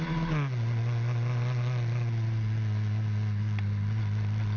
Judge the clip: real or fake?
real